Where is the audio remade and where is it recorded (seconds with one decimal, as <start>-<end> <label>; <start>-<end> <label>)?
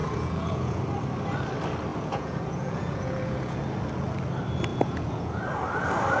0.0-0.8 remade; 0.8-1.9 recorded; 1.9-3.6 remade; 3.6-4.7 recorded; 4.7-5.4 remade; 5.4-6.2 recorded